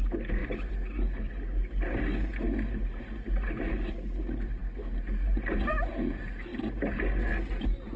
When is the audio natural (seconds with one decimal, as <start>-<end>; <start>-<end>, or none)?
0.0-8.0